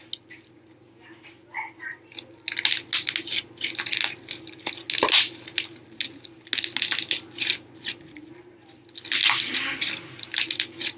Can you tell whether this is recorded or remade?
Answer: recorded